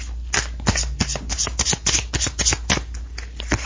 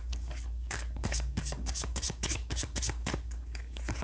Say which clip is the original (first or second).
first